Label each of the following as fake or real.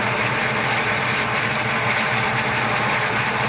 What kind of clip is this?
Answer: fake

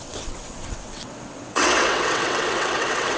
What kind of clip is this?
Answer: fake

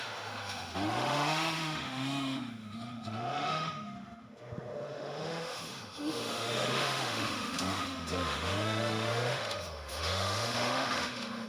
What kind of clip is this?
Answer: fake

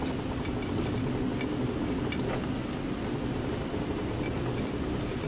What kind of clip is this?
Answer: real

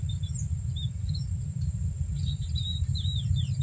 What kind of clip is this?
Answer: fake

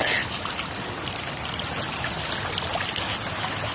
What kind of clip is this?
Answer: real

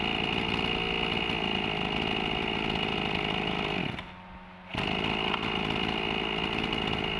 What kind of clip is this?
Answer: real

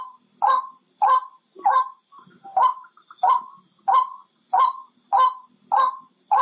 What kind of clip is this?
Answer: real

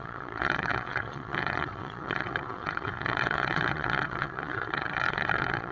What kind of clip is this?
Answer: fake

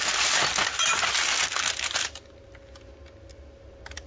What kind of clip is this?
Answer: real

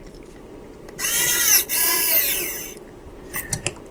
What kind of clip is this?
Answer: fake